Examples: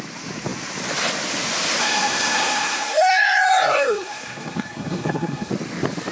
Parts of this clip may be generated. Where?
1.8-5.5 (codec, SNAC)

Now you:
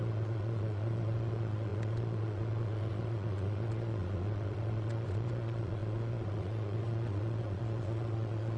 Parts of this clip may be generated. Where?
0.0-8.6 (vocoder, Vocos)

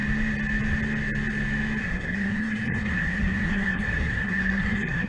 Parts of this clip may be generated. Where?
1.8-5.1 (codec, SNAC)

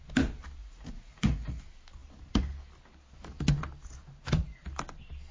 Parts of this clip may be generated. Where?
0.6-1.6 (vocoder, Vocos)

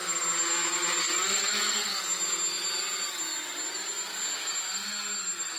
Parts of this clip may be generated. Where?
1.0-1.9 (codec, SNAC)

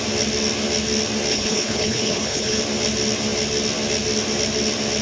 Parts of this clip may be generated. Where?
1.3-2.6 (codec, HILCodec)